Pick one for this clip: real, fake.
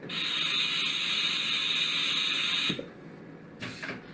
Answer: real